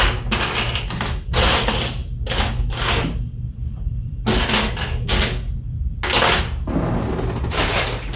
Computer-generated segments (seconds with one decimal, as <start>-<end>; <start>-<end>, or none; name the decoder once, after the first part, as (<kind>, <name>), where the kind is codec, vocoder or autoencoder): none